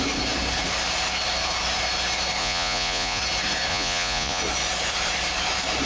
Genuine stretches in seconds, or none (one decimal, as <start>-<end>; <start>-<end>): 0.0-2.4; 3.2-3.7; 4.4-5.9